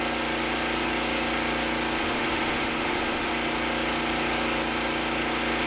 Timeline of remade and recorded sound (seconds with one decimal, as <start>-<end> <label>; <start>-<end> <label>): 0.0-2.0 recorded; 2.0-3.3 remade; 3.3-5.7 recorded